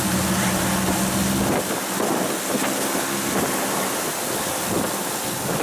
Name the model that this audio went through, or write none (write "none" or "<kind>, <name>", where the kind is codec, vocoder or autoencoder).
none